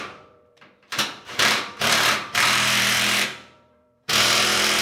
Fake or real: fake